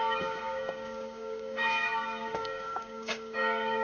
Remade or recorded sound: remade